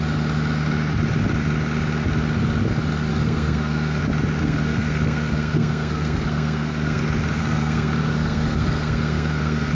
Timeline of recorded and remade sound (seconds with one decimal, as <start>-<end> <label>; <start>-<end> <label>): 0.0-3.1 recorded; 3.1-4.0 remade; 4.0-4.4 recorded; 4.4-7.0 remade; 7.0-7.4 recorded; 7.4-9.7 remade

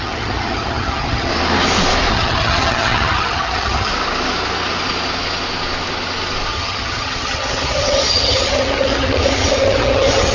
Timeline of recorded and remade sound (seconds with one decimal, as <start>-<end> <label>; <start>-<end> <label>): 0.0-1.3 remade; 1.3-2.1 recorded; 2.1-3.9 remade; 3.9-6.5 recorded; 6.5-10.3 remade

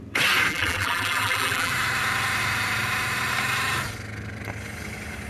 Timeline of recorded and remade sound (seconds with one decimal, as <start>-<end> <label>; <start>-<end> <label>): 0.0-0.5 recorded; 0.5-1.7 remade; 1.7-5.3 recorded

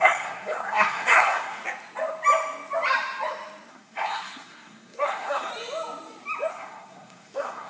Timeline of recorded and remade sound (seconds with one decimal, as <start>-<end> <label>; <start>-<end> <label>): 0.0-1.6 remade; 1.6-3.7 recorded; 3.7-5.5 remade; 5.5-6.5 recorded; 6.5-7.7 remade

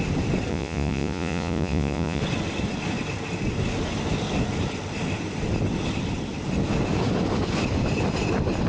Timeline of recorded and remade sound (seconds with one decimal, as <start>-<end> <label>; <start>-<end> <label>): 0.0-0.5 recorded; 0.5-2.2 remade; 2.2-8.7 recorded

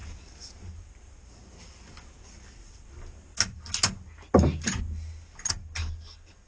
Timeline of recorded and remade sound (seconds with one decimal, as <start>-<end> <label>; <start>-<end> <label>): 0.0-2.9 remade; 2.9-6.5 recorded

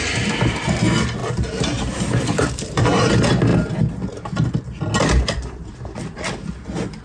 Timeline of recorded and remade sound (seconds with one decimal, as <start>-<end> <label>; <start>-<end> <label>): 0.0-1.2 recorded; 1.2-3.1 remade; 3.1-7.0 recorded

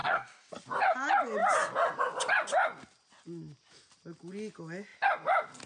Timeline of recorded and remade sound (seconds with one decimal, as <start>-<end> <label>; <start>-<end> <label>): 0.0-0.5 remade; 0.5-5.7 recorded